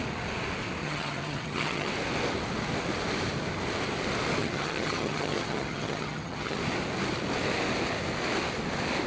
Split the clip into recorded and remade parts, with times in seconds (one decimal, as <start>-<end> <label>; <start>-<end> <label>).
0.0-0.8 recorded; 0.8-1.9 remade; 1.9-4.4 recorded; 4.4-6.6 remade; 6.6-9.1 recorded